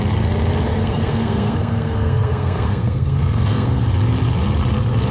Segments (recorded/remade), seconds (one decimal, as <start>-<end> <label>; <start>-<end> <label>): 0.0-0.7 recorded; 0.7-3.8 remade; 3.8-5.1 recorded